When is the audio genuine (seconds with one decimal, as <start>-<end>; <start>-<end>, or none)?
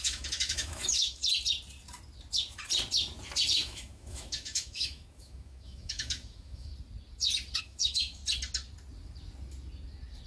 1.2-3.5; 6.7-7.6; 8.2-10.3